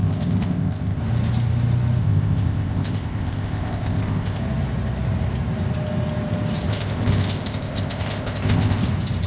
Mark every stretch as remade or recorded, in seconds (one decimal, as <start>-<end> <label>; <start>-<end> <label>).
0.0-1.0 remade; 1.0-2.0 recorded; 2.0-4.4 remade; 4.4-6.7 recorded; 6.7-8.8 remade; 8.8-9.3 recorded